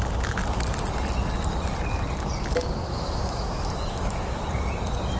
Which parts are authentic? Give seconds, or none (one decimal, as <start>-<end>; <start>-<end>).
0.0-2.8; 4.4-5.2